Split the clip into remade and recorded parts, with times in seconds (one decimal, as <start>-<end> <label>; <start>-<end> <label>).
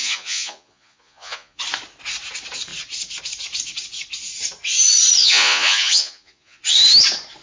0.0-1.6 remade; 1.6-5.2 recorded; 5.2-6.6 remade; 6.6-7.4 recorded